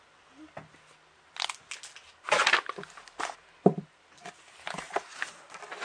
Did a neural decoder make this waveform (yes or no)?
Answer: no